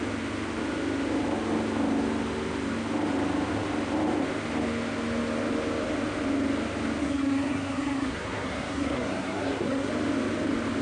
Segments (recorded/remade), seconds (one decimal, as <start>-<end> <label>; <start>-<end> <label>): 0.0-7.0 recorded; 7.0-9.9 remade; 9.9-10.8 recorded